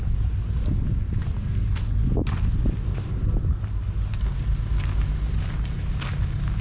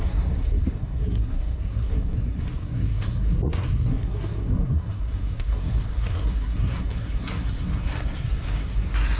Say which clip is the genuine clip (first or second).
first